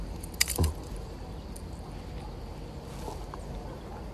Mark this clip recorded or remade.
recorded